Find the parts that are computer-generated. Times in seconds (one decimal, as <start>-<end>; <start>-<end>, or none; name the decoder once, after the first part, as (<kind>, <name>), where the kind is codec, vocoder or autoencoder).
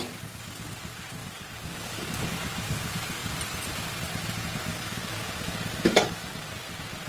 1.2-2.2 (codec, DAC); 4.7-6.6